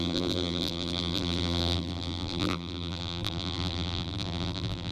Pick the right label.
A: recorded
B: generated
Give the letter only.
B